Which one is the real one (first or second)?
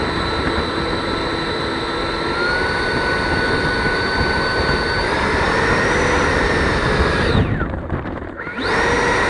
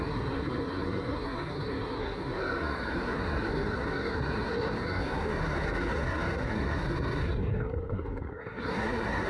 first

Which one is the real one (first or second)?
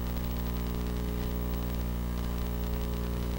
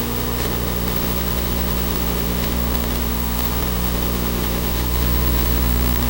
first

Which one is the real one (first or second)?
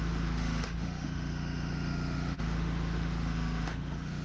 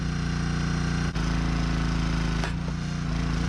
second